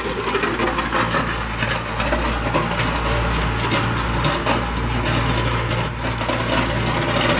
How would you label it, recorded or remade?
recorded